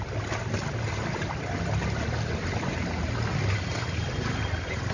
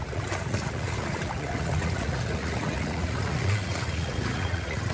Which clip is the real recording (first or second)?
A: first